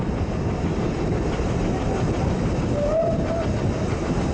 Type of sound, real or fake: real